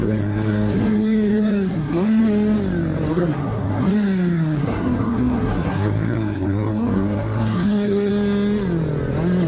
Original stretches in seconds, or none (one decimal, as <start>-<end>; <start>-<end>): 2.2-3.1; 8.1-9.5